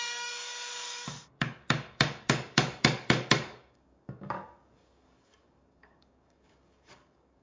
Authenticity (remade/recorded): remade